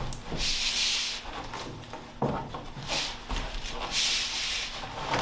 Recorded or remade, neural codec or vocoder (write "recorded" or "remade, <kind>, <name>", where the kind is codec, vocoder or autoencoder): recorded